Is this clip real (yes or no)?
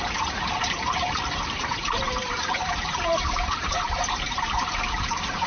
no